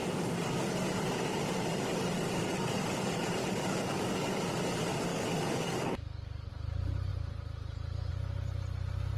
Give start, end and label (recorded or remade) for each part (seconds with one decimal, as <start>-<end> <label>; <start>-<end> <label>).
0.0-3.4 recorded; 3.4-4.5 remade; 4.5-5.1 recorded; 5.1-6.5 remade; 6.5-9.2 recorded